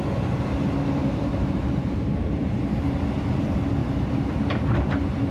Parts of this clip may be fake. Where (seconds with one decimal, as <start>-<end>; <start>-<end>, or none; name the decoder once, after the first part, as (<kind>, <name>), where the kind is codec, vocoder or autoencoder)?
1.0-2.9 (vocoder, BigVGAN v2); 3.8-5.3